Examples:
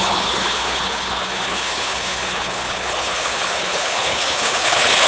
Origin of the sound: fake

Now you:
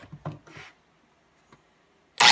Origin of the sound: real